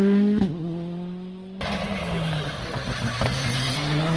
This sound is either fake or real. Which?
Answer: real